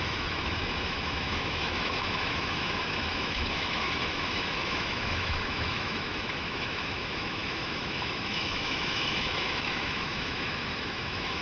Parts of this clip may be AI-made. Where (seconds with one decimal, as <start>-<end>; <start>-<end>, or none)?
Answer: 0.0-11.4